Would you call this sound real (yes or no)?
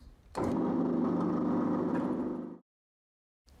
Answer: yes